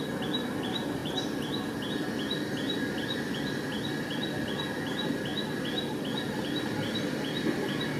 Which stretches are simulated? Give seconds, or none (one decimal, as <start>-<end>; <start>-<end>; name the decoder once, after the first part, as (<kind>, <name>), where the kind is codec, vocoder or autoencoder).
none